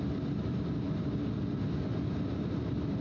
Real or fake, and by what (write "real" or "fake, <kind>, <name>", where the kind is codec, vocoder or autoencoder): real